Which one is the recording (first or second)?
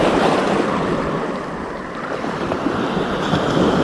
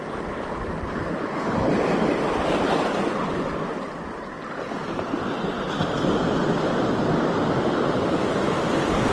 second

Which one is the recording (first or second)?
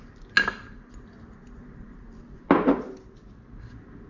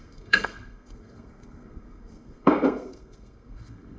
first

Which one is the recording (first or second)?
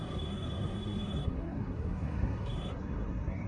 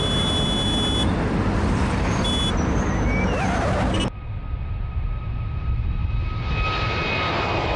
second